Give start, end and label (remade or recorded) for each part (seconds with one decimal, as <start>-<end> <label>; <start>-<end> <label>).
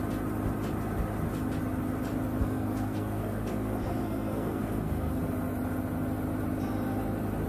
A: 0.0-2.4 recorded; 2.4-5.2 remade; 5.2-7.5 recorded